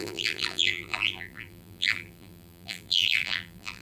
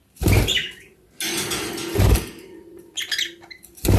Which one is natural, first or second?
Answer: second